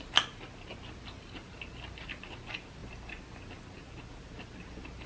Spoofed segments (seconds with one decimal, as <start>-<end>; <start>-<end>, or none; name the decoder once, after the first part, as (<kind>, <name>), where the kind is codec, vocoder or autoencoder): none